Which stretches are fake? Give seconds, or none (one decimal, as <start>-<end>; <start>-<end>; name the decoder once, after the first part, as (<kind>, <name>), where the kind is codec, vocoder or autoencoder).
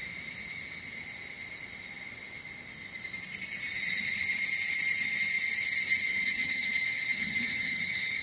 6.1-8.2 (vocoder, HiFi-GAN)